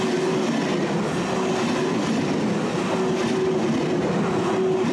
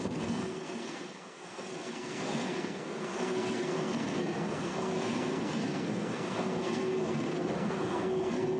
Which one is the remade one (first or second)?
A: second